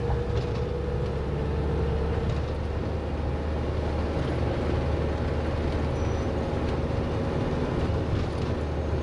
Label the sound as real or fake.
real